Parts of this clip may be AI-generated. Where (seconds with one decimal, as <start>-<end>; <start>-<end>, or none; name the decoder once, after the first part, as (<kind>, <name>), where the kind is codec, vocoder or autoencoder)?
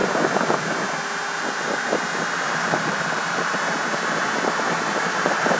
1.4-1.9 (vocoder, BigVGAN v2); 2.7-3.5; 4.9-5.6